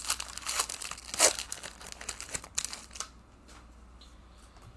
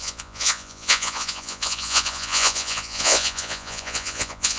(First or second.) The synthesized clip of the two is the second